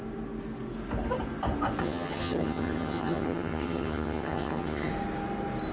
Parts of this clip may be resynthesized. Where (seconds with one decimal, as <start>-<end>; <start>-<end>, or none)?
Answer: 1.8-4.9